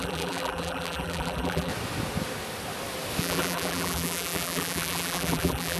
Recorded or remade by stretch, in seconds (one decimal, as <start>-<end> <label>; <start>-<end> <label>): 0.0-1.7 remade; 1.7-3.2 recorded; 3.2-5.8 remade